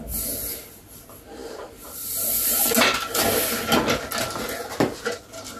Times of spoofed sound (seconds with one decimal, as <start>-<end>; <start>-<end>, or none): none